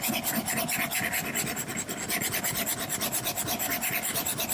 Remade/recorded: recorded